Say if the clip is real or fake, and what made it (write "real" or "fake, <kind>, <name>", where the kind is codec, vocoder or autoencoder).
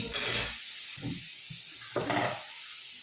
real